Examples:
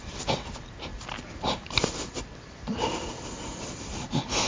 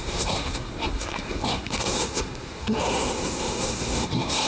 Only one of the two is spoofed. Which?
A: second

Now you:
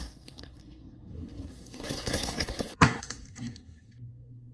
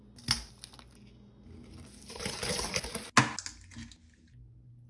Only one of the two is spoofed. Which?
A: first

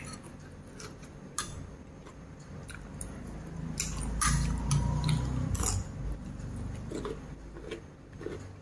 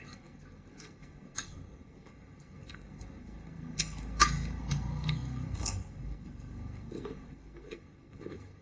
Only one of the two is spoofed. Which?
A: second